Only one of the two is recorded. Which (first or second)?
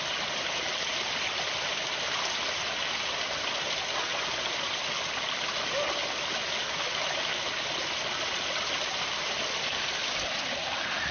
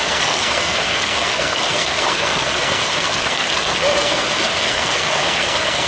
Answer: first